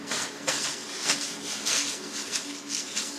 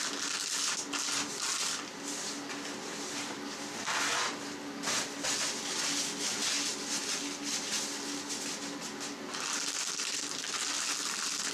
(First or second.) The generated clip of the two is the first